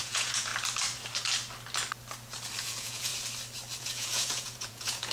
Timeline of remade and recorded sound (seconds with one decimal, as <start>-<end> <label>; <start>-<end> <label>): 0.0-0.5 remade; 0.5-2.6 recorded; 2.6-3.1 remade; 3.1-3.8 recorded; 3.8-5.1 remade